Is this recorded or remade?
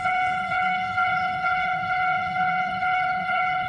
remade